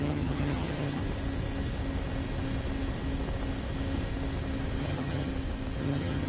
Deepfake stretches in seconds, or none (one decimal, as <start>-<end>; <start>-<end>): 0.0-1.0; 4.8-5.3; 5.8-6.3